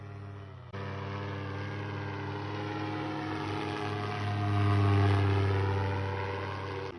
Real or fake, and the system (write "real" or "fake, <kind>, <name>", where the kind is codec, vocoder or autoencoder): real